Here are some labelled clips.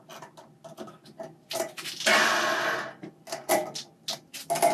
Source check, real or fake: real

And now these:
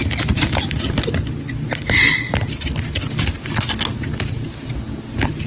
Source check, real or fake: real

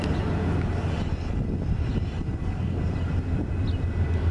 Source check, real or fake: real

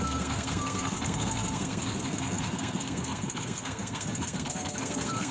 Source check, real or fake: fake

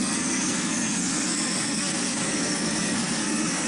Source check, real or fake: fake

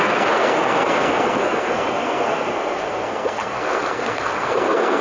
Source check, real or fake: fake